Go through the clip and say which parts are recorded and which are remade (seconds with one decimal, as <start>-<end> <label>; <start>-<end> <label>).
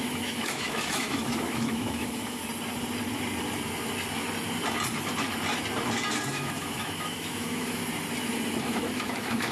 0.0-2.4 remade; 2.4-6.3 recorded; 6.3-7.8 remade; 7.8-8.6 recorded; 8.6-9.5 remade